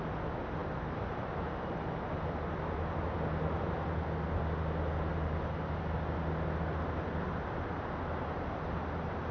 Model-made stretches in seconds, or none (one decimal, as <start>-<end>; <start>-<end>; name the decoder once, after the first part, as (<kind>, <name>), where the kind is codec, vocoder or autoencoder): none